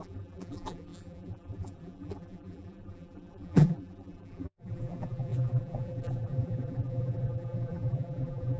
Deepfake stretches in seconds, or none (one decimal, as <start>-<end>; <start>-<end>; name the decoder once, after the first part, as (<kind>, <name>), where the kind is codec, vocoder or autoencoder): 0.0-8.6 (vocoder, BigVGAN v2)

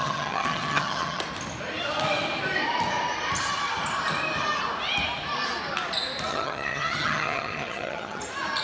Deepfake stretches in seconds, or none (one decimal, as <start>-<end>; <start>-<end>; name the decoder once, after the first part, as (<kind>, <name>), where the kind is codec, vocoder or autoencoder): 0.0-1.2 (vocoder, HiFi-GAN); 6.3-8.2

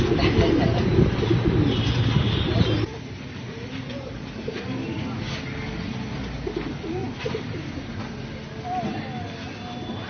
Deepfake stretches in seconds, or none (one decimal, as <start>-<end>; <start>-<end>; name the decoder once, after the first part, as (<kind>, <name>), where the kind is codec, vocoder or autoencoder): 0.9-4.1 (vocoder, BigVGAN v2); 7.0-7.8

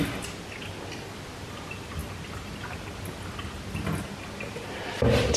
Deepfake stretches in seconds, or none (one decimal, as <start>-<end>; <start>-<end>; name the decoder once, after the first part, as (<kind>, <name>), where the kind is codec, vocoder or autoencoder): none

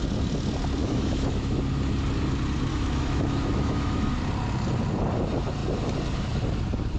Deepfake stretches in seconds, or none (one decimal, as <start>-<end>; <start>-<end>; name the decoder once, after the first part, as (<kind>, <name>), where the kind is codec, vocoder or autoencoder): 0.8-1.6 (autoencoder, DAC-VAE); 2.7-4.1

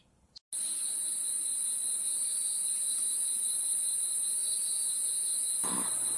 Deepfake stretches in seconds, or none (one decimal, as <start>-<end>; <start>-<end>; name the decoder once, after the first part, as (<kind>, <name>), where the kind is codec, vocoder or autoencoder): 2.9-3.6 (vocoder, Vocos); 4.4-5.7